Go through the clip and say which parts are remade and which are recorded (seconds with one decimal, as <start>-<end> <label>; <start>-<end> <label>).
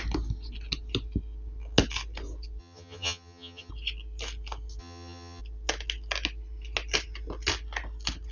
0.0-2.6 recorded; 2.6-3.7 remade; 3.7-4.8 recorded; 4.8-5.4 remade; 5.4-8.3 recorded